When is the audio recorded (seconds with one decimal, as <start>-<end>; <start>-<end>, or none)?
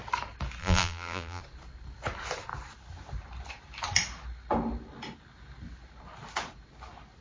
0.0-0.6; 1.4-7.2